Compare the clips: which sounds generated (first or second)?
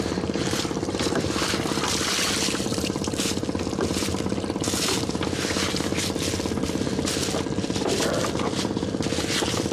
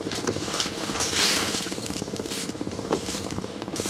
second